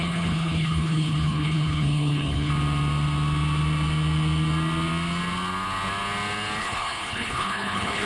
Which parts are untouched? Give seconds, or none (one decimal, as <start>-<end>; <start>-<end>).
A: 2.5-6.6